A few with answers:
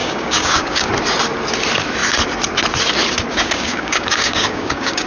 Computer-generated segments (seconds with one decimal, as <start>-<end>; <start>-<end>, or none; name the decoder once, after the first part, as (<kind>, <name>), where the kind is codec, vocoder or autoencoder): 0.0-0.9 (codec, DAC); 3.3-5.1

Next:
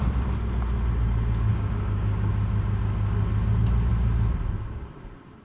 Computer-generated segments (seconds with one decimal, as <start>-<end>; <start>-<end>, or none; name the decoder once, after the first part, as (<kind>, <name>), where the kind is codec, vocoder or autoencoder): 1.5-2.3 (codec, DAC)

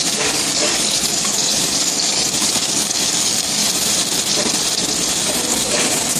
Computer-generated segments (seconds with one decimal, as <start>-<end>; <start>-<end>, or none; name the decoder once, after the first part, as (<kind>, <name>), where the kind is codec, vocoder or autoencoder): 0.0-3.6 (codec, DAC); 5.5-6.2

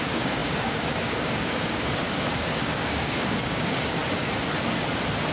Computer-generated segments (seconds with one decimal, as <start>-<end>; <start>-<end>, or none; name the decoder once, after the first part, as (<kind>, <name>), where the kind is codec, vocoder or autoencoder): 0.0-4.0 (codec, DAC)